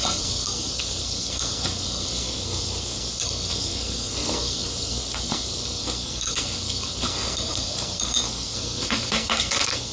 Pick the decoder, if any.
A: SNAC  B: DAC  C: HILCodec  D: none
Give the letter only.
A